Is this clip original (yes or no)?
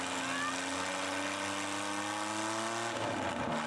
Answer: yes